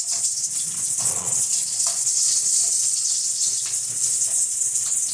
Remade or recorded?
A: remade